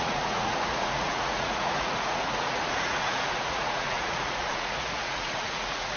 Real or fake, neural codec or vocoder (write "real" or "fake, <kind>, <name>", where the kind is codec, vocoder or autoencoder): fake, vocoder, Vocos